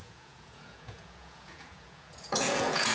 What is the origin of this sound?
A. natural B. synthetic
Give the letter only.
B